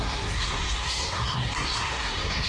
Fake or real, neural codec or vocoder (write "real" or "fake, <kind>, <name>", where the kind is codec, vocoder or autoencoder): fake, codec, SNAC